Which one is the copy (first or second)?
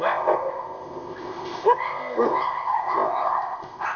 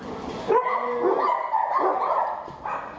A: first